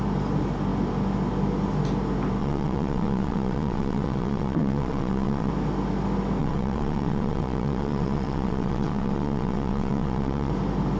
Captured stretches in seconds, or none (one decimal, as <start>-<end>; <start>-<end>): 0.0-2.4; 5.5-6.4; 10.5-11.0